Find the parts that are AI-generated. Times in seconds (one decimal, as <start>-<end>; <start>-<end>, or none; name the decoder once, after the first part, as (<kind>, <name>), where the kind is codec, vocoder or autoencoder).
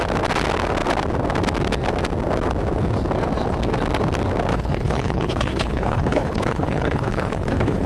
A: 4.5-7.9 (codec, HILCodec)